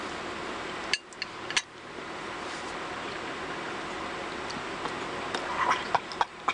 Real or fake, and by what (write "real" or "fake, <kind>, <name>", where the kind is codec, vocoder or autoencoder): real